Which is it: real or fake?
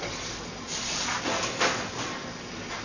real